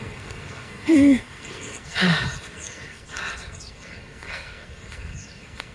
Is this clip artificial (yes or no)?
yes